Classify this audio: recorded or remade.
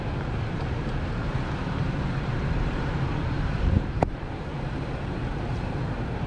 remade